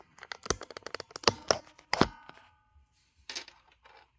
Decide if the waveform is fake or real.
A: real